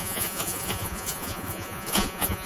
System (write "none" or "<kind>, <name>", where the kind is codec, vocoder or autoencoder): vocoder, Vocos